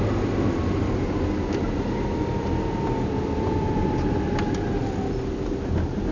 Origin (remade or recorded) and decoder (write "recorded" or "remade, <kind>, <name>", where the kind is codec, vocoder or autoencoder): recorded